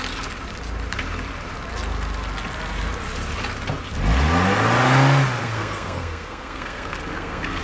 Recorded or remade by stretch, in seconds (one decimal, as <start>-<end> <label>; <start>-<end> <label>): 0.0-5.4 recorded; 5.4-7.6 remade